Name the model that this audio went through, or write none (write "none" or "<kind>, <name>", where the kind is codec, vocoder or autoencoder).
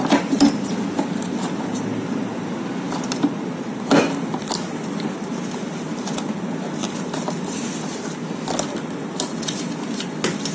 none